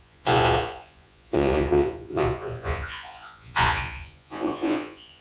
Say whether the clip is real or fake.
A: fake